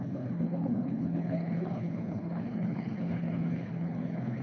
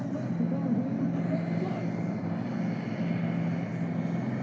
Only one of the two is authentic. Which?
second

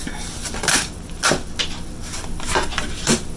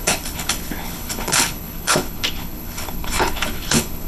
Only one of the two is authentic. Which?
first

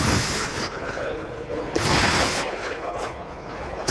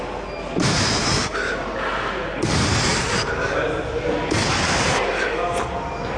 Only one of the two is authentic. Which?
second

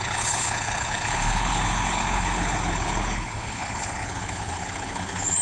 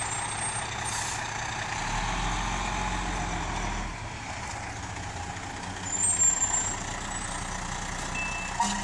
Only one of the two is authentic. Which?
second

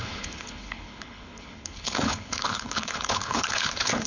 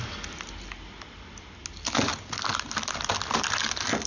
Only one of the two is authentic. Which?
second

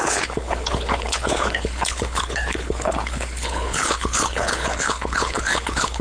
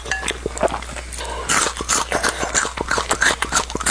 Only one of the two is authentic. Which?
second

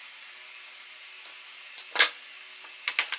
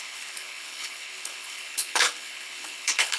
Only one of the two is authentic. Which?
first